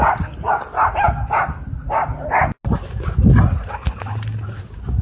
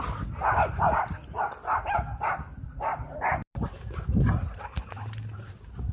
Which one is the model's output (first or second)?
second